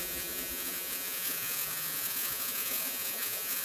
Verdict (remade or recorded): remade